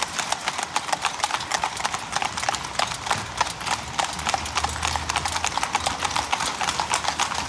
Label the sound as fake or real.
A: real